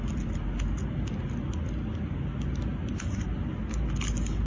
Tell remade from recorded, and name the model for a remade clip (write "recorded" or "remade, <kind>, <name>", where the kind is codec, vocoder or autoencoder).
recorded